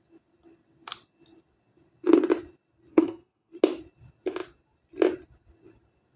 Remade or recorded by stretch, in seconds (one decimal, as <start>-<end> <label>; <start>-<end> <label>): 0.0-2.9 recorded; 2.9-3.5 remade; 3.5-6.2 recorded